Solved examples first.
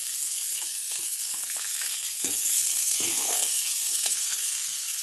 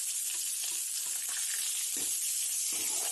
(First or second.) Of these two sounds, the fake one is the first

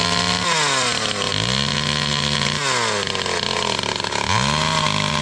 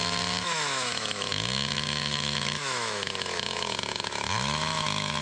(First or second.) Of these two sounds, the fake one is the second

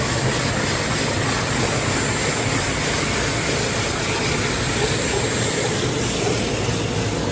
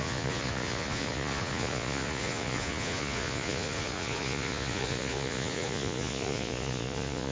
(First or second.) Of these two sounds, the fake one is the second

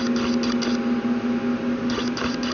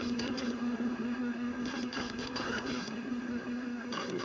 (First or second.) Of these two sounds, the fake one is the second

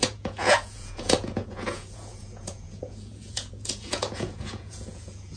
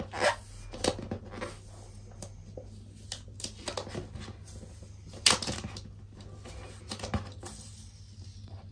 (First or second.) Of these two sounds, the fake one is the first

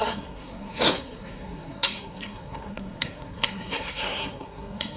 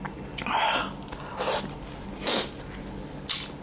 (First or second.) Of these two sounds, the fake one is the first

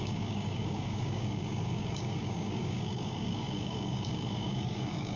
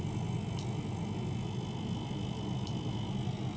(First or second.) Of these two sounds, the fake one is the first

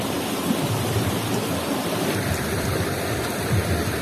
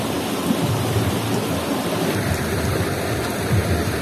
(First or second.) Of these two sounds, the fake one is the first